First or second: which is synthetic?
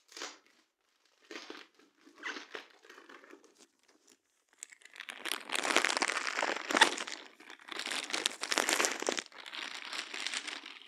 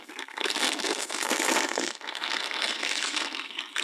second